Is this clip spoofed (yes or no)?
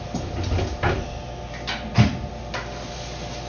no